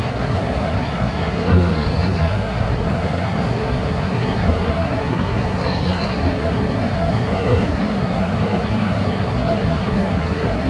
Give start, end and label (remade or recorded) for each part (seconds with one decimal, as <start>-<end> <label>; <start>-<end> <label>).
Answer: 0.0-10.7 remade